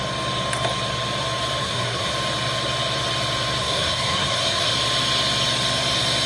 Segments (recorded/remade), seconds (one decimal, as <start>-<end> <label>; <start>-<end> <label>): 0.0-1.6 recorded; 1.6-2.1 remade; 2.1-3.6 recorded; 3.6-4.7 remade; 4.7-6.3 recorded